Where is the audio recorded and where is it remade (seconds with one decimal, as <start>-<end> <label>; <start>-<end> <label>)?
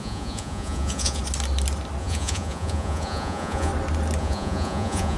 0.0-1.2 remade; 1.2-2.0 recorded; 2.0-3.7 remade; 3.7-4.2 recorded; 4.2-5.2 remade